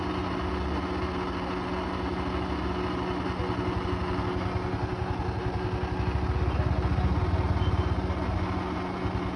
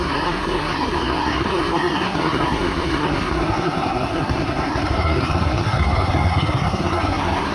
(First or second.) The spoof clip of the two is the second